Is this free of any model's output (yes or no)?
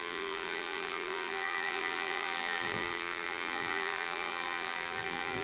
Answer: no